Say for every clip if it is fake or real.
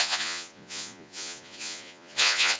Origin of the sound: fake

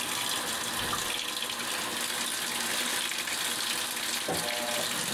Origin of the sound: real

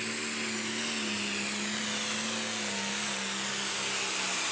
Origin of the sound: real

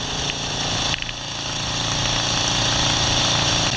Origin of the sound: real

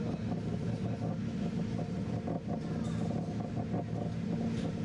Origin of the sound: real